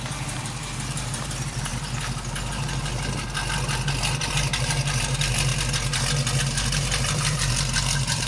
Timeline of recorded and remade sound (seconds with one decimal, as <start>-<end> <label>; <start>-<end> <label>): 0.0-1.7 remade; 1.7-4.3 recorded; 4.3-5.5 remade; 5.5-6.4 recorded; 6.4-8.3 remade